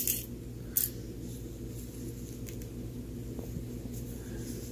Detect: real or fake real